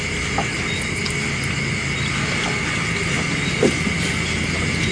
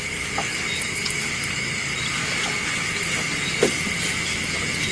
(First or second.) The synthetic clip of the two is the second